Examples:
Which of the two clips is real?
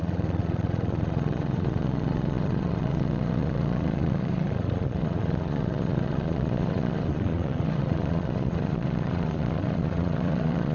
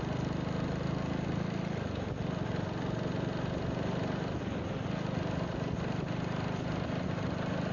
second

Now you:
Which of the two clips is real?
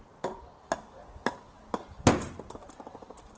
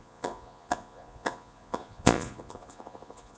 first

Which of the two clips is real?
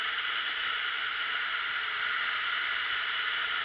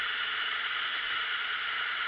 first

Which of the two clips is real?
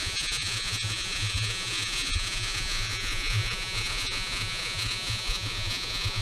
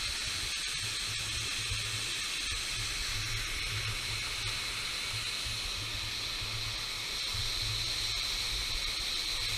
second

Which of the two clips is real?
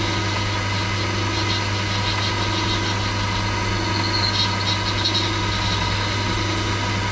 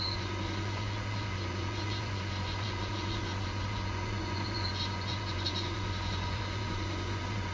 first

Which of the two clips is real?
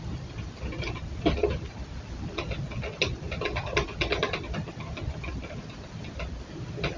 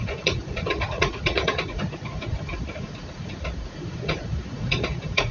first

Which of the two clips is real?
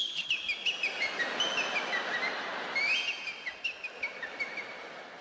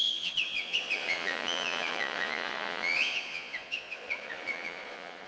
first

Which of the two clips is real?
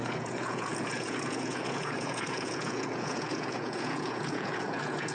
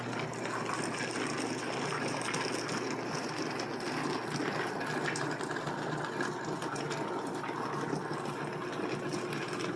second